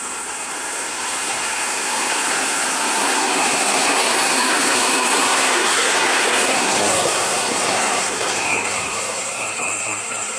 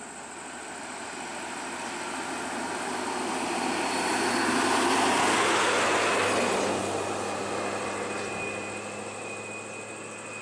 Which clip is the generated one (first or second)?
first